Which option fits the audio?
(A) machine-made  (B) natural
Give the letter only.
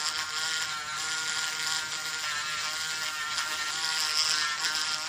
B